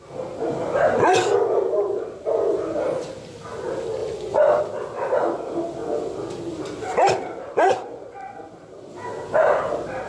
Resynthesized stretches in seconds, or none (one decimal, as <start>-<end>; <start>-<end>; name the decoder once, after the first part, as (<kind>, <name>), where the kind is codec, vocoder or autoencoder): 4.0-4.6 (vocoder, Vocos)